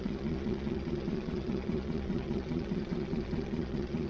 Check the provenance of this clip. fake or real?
fake